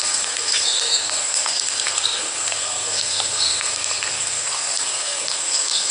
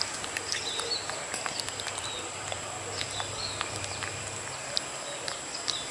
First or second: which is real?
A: second